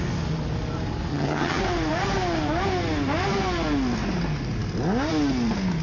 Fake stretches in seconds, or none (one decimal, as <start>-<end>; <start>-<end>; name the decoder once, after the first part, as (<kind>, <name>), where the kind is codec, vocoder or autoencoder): 1.1-1.6 (vocoder, HiFi-GAN)